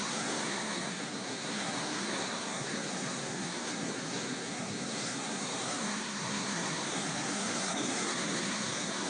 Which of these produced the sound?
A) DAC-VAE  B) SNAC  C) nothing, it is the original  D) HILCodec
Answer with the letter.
B